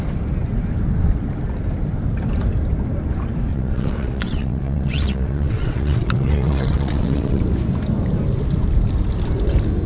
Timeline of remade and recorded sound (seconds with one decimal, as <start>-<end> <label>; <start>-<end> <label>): 0.0-3.5 recorded; 3.5-7.4 remade; 7.4-9.9 recorded